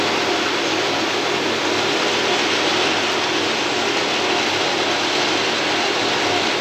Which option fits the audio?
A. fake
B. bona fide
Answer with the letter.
B